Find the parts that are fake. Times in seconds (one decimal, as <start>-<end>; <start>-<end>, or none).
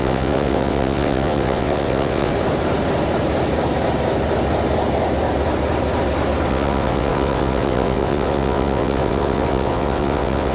0.0-2.3; 6.5-10.5